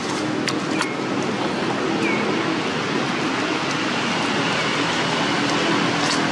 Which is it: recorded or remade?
recorded